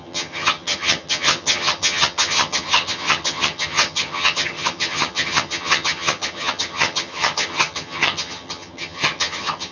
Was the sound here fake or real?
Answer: fake